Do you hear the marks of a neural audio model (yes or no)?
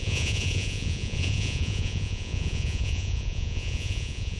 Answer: yes